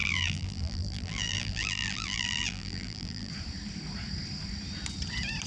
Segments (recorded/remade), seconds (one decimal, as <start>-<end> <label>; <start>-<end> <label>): 0.0-3.3 remade; 3.3-5.5 recorded